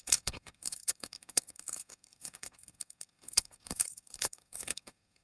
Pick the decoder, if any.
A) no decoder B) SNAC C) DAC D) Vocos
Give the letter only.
B